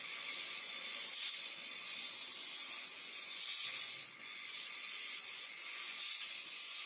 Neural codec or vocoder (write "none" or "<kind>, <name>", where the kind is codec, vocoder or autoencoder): vocoder, Vocos